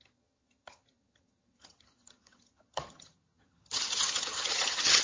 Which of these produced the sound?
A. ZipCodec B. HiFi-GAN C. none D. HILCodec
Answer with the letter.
B